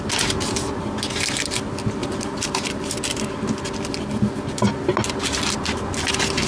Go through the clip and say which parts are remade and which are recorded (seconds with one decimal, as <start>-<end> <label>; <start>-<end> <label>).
0.0-6.5 recorded